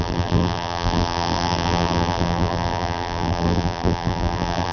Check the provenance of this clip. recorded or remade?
remade